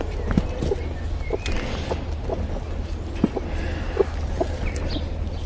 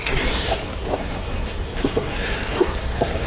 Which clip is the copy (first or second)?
second